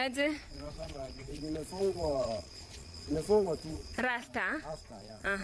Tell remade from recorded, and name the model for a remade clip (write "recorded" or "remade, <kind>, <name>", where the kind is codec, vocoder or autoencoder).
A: remade, vocoder, Vocos